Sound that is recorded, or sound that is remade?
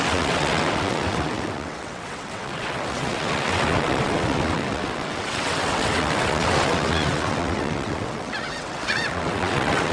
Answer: remade